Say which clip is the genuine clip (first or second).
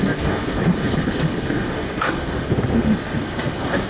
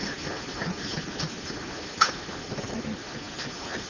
second